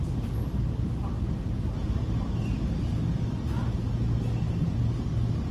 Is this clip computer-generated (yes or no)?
no